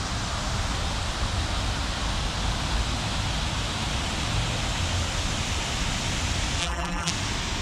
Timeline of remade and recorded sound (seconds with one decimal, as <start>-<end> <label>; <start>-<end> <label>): 0.0-6.6 recorded; 6.6-7.1 remade; 7.1-7.6 recorded